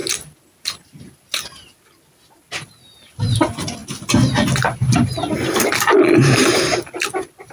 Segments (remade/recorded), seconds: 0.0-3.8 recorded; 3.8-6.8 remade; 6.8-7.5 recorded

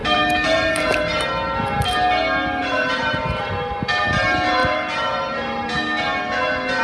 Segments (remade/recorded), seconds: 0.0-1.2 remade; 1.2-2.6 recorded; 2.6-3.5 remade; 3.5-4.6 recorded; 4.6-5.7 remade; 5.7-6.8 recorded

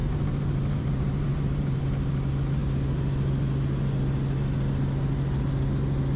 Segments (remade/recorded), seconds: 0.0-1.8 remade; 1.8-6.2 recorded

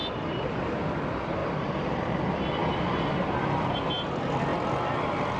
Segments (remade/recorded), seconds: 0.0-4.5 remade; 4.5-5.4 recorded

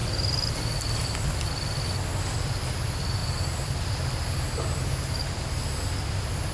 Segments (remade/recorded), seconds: 0.0-3.2 recorded; 3.2-5.1 remade; 5.1-6.5 recorded